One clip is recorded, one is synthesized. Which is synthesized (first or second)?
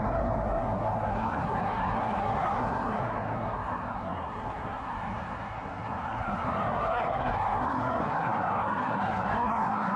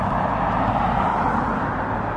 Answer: first